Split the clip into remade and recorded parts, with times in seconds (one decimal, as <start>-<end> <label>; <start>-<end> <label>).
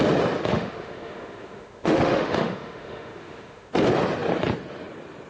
0.0-0.5 recorded; 0.5-3.7 remade; 3.7-5.3 recorded